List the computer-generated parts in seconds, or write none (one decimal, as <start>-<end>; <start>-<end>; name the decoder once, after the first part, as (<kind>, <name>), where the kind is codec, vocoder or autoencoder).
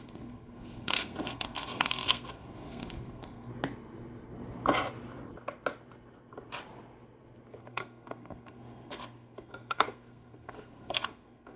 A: 0.0-3.5 (codec, SNAC); 7.6-11.6